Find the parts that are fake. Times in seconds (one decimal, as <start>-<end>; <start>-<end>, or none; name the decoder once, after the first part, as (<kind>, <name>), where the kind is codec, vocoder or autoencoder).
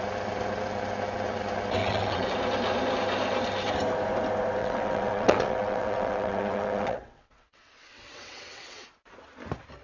1.8-2.3 (vocoder, WaveNeXt); 4.6-8.8